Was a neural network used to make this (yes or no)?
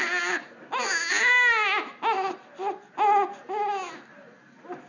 no